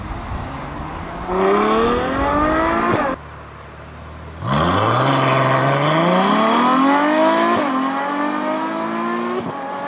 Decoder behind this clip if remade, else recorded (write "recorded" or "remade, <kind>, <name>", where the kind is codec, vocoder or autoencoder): recorded